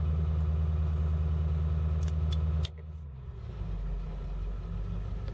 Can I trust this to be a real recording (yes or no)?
yes